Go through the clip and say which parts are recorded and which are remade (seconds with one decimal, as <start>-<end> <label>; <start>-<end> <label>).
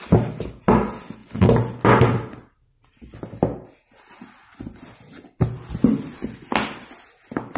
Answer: 0.0-7.6 recorded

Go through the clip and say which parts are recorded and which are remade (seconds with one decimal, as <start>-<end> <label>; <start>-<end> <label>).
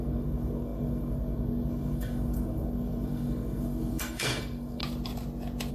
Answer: 0.0-4.8 remade; 4.8-5.7 recorded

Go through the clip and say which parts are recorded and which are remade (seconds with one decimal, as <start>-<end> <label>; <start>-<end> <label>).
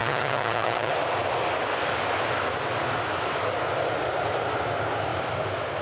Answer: 0.0-0.9 remade; 0.9-5.8 recorded